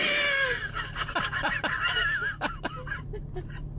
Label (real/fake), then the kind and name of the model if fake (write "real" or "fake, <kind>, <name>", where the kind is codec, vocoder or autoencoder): real